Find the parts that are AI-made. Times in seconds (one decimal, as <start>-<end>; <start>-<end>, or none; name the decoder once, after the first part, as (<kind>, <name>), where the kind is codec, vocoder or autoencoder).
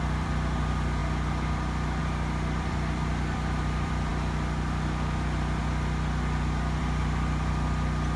0.0-4.1 (vocoder, BigVGAN v2); 6.8-8.2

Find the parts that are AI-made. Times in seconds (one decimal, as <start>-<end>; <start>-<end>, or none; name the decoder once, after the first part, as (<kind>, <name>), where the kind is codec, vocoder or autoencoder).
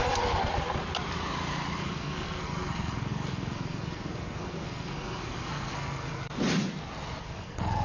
0.0-0.5 (codec, SNAC); 1.8-6.3; 7.2-7.8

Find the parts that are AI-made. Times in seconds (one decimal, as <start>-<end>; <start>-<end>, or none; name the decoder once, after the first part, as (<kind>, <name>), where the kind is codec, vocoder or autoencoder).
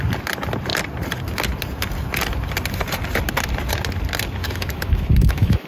4.4-5.7 (autoencoder, DAC-VAE)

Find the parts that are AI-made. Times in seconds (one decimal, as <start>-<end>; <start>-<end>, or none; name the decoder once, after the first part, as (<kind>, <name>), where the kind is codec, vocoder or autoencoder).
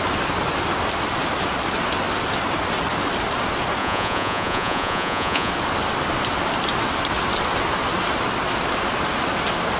3.8-5.5 (vocoder, Vocos)